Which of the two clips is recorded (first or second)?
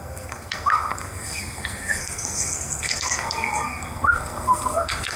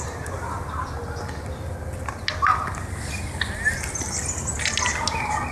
second